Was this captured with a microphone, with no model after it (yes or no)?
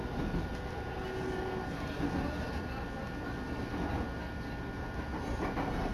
yes